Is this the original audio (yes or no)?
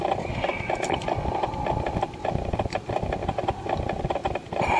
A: yes